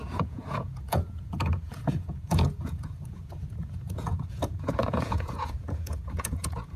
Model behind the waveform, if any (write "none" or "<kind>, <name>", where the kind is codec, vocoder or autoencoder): vocoder, Vocos